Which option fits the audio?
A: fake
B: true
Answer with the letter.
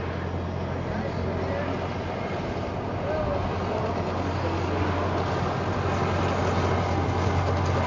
B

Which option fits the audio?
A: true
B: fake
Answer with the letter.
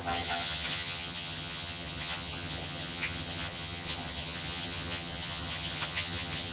B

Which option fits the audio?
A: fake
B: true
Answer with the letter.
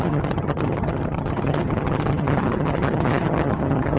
A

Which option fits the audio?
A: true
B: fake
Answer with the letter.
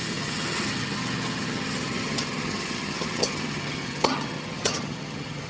B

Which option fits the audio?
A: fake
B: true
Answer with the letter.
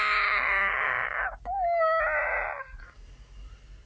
B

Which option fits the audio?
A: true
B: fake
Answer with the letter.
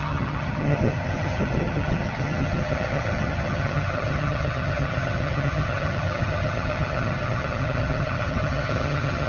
B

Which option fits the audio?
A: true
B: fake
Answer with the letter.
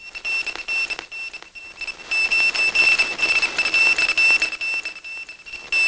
A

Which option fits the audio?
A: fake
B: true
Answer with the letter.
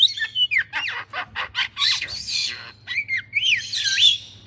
B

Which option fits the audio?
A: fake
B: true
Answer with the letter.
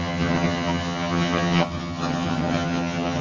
A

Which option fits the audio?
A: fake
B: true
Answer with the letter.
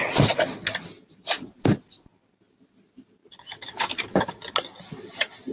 B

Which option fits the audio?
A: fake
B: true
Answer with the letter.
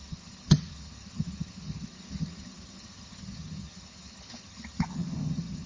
A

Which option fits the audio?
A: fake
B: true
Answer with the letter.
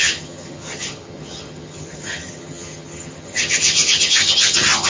A